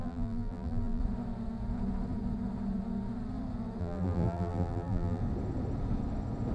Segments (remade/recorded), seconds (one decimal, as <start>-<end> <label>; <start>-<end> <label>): 0.0-1.0 remade; 1.0-3.8 recorded; 3.8-5.2 remade; 5.2-6.5 recorded